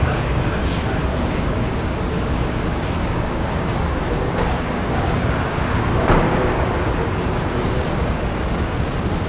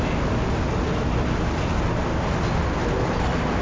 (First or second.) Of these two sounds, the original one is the second